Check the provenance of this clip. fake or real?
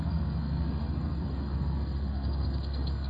fake